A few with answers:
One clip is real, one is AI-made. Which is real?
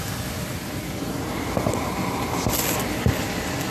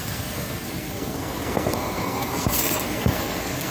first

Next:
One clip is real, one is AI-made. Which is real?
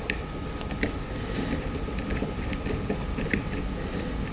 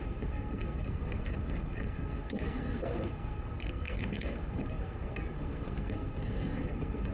first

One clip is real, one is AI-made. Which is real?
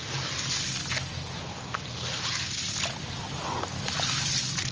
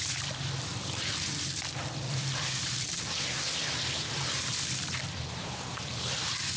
first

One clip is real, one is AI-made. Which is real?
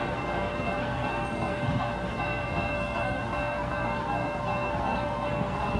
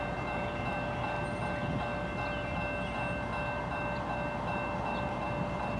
second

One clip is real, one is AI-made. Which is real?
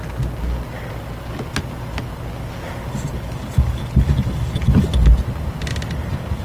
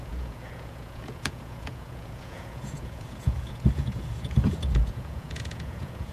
first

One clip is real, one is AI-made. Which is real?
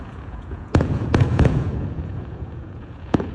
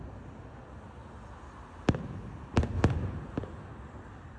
second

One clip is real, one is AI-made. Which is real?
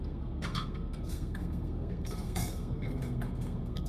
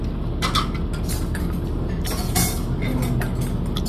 second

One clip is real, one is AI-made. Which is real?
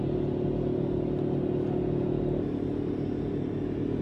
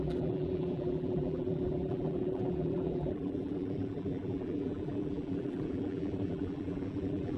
first